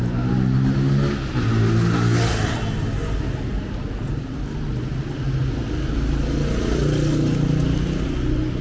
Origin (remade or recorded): recorded